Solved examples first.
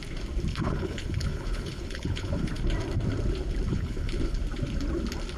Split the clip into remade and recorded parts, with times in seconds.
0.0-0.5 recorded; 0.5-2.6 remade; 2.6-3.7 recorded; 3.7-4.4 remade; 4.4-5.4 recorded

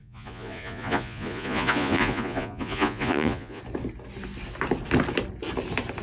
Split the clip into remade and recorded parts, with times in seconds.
0.0-3.6 remade; 3.6-6.0 recorded

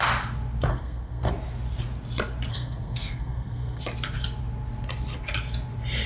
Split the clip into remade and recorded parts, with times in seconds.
0.0-0.7 recorded; 0.7-1.3 remade; 1.3-2.5 recorded; 2.5-3.8 remade; 3.8-6.1 recorded

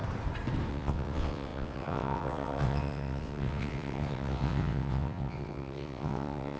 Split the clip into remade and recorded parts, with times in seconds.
0.0-0.7 recorded; 0.7-6.6 remade

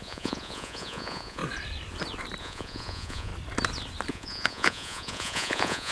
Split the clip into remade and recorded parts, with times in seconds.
0.0-1.4 remade; 1.4-2.4 recorded; 2.4-3.3 remade; 3.3-4.1 recorded; 4.1-5.9 remade